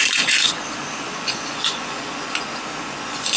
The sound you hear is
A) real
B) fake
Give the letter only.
B